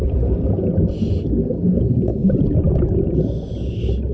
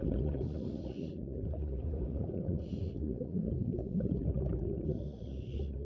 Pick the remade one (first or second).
second